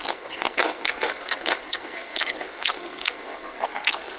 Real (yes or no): no